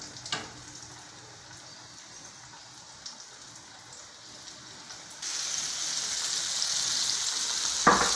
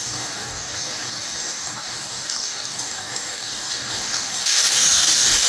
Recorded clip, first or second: first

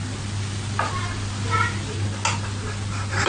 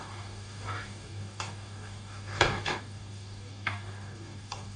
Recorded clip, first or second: first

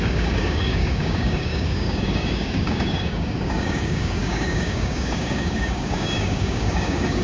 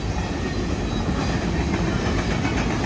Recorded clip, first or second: second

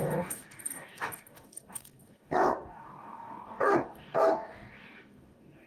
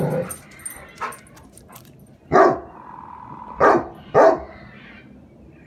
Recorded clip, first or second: second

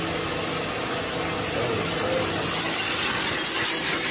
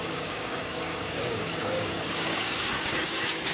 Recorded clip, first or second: first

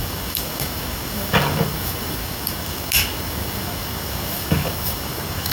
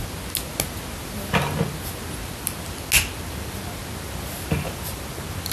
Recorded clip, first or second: second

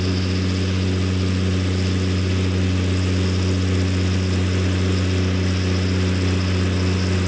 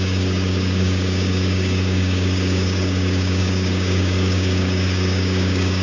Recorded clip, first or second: first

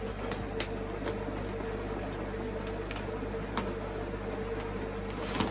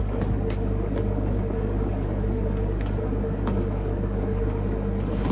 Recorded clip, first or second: first